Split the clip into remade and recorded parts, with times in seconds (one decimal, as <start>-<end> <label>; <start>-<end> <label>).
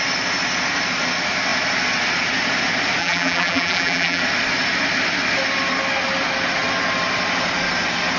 0.0-3.0 recorded; 3.0-4.2 remade; 4.2-8.2 recorded